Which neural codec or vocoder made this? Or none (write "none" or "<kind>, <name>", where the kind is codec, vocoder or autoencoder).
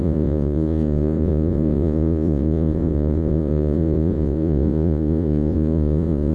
vocoder, Vocos